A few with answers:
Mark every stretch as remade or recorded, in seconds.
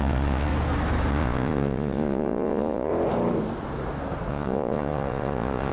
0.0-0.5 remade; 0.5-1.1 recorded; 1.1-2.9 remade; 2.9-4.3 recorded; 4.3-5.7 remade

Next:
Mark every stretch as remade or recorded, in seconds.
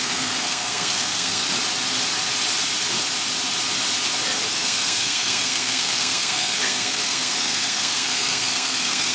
0.0-1.4 remade; 1.4-4.5 recorded; 4.5-9.1 remade